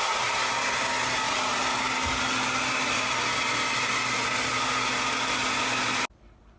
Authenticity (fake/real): real